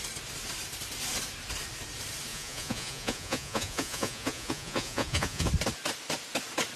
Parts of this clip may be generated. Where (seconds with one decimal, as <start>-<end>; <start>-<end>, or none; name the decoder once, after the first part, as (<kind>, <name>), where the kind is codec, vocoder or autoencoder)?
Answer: 2.3-5.5 (vocoder, Vocos)